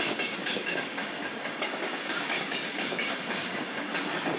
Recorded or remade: remade